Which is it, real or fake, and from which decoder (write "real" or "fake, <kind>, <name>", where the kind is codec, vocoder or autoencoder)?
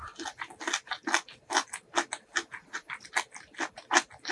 real